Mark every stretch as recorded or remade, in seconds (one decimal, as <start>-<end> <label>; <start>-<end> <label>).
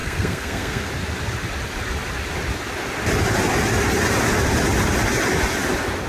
0.0-0.9 remade; 0.9-6.1 recorded